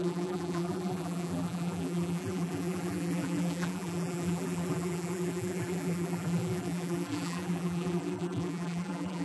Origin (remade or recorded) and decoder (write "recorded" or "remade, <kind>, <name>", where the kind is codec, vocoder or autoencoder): remade, vocoder, BigVGAN v2